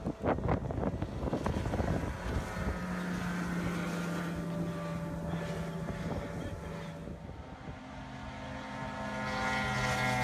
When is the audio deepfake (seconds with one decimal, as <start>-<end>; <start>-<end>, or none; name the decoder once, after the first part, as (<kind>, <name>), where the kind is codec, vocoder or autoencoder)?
none